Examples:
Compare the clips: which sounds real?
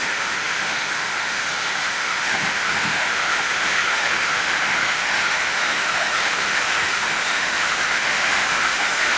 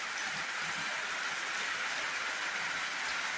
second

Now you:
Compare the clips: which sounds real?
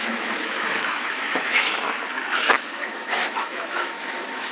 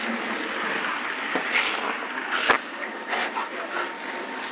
second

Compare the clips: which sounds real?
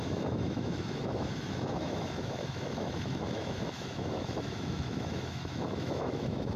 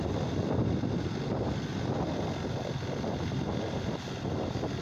second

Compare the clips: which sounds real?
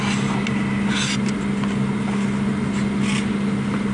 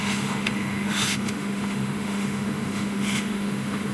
first